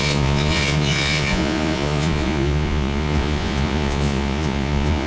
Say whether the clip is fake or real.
fake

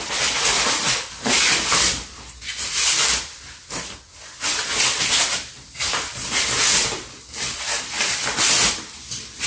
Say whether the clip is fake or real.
real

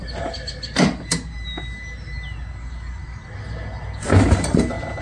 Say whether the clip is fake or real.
real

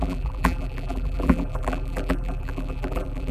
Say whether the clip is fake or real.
fake